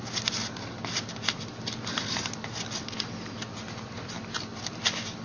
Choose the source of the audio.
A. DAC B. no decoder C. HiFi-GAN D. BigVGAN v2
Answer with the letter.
B